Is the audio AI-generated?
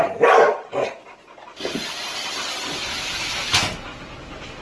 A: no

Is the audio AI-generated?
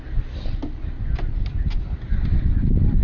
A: no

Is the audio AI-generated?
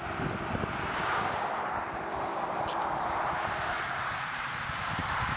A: no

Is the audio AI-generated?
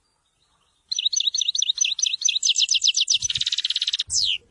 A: no